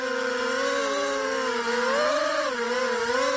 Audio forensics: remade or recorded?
recorded